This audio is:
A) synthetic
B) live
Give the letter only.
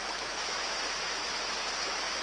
A